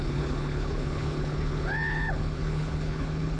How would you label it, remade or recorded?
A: remade